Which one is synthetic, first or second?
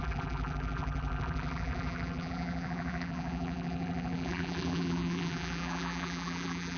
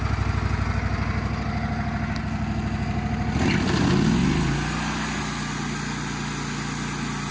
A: first